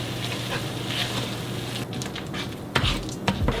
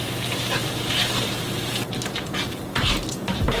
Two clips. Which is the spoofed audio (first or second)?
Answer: second